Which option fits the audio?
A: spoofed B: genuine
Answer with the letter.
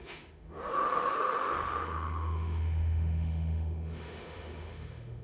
A